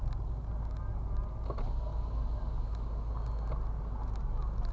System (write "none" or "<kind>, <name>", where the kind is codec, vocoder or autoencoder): none